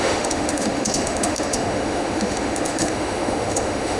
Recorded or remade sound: remade